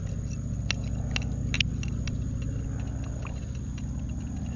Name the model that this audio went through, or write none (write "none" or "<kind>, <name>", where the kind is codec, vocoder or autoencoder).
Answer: none